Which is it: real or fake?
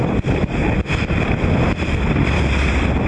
fake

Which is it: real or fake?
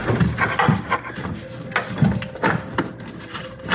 real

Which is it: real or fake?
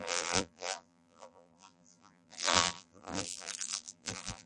fake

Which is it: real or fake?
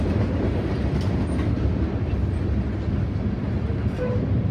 real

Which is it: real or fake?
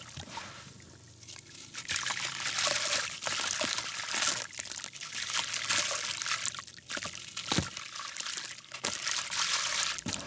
real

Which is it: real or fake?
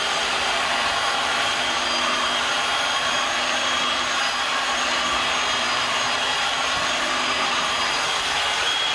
fake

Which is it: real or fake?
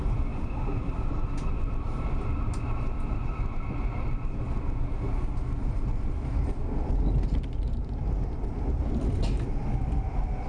real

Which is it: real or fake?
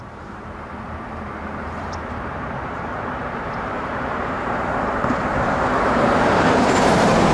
fake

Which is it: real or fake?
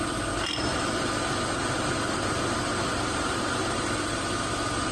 fake